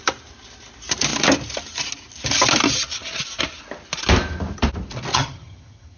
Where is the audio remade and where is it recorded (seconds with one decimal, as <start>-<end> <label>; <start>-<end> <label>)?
0.0-5.1 recorded; 5.1-6.0 remade